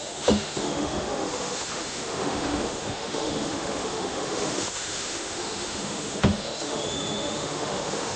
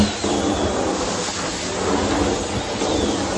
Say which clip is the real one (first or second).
second